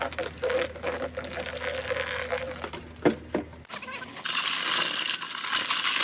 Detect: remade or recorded recorded